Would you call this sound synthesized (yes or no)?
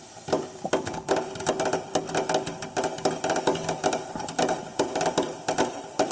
no